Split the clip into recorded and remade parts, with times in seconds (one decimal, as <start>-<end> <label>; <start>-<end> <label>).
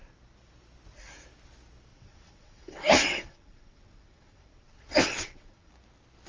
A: 0.0-1.9 recorded; 1.9-5.7 remade; 5.7-6.3 recorded